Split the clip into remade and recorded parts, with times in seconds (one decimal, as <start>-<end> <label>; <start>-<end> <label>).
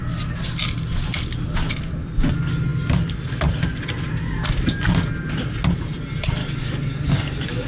0.0-6.4 recorded; 6.4-7.7 remade